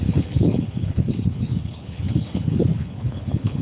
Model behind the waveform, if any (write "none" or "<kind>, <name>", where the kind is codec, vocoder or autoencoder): codec, HILCodec